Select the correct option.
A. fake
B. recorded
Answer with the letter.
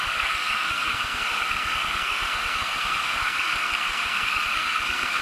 A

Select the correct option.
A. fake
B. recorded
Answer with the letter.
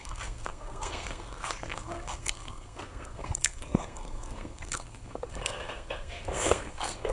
A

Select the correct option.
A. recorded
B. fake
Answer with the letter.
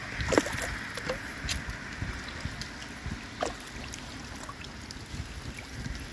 A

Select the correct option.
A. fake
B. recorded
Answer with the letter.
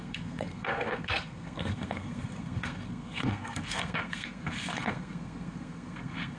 A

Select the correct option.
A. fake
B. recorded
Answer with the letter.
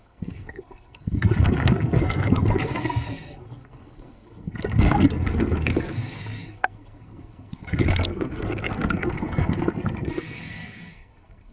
A